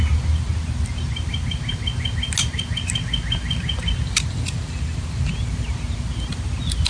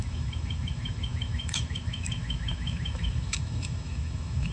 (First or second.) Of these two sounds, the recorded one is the first